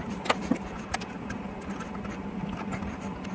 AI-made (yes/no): no